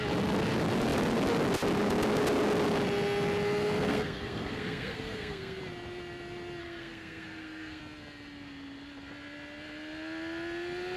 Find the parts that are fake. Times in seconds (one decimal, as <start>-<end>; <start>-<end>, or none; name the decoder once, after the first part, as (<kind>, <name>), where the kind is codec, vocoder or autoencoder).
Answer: 3.8-5.6 (codec, SNAC); 6.6-7.8